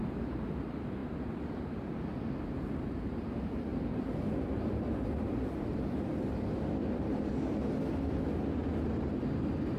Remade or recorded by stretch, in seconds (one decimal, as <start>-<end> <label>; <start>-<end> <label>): 0.0-3.7 recorded; 3.7-7.6 remade; 7.6-8.6 recorded; 8.6-9.1 remade; 9.1-9.8 recorded